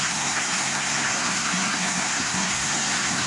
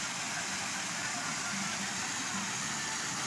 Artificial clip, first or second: first